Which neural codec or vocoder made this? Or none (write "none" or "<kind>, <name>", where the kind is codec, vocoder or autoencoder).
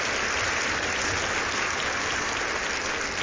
none